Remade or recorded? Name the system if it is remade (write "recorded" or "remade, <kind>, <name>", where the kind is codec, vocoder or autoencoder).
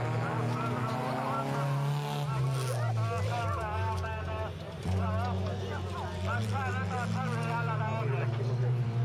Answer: recorded